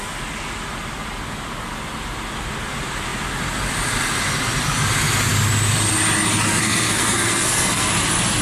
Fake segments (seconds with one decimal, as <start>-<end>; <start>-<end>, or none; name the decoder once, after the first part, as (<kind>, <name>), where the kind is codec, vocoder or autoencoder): 6.5-7.9 (codec, SNAC)